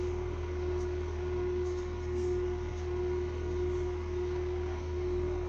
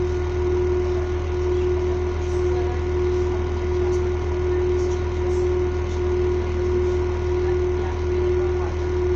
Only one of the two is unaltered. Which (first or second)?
second